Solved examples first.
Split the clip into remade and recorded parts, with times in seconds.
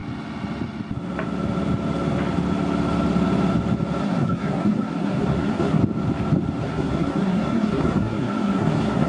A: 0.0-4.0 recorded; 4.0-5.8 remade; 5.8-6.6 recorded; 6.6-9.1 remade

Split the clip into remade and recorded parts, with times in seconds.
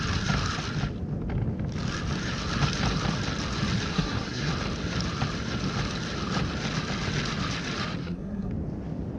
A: 0.0-3.9 recorded; 3.9-4.5 remade; 4.5-8.0 recorded; 8.0-8.5 remade; 8.5-9.2 recorded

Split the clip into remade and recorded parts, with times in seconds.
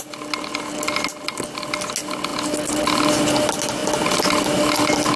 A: 0.0-5.2 recorded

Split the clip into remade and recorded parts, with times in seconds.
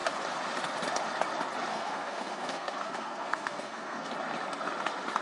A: 0.0-1.7 recorded; 1.7-4.1 remade; 4.1-5.2 recorded